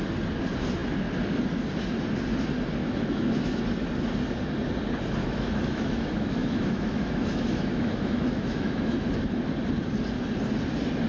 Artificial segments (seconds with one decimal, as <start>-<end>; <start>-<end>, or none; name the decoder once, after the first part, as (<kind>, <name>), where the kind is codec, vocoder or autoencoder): 2.8-3.6 (autoencoder, DAC-VAE); 5.2-9.1